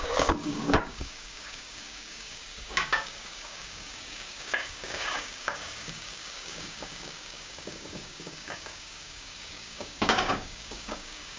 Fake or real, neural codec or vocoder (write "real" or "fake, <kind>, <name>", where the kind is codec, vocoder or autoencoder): fake, codec, DAC